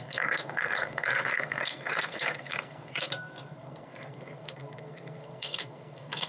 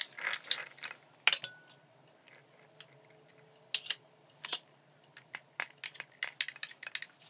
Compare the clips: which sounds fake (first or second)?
first